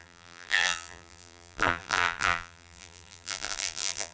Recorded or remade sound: remade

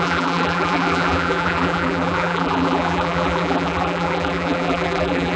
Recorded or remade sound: remade